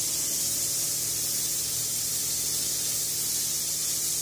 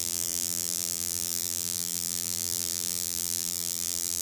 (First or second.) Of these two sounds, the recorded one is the first